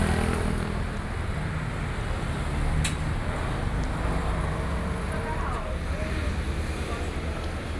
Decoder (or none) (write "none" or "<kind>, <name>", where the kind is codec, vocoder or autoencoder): none